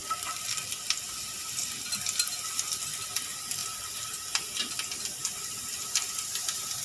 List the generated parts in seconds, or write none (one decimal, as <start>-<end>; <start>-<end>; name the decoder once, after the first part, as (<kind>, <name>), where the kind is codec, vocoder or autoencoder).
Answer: 0.0-0.6 (vocoder, BigVGAN v2); 3.6-4.7